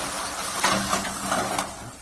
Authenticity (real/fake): real